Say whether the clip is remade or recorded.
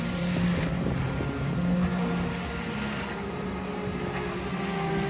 recorded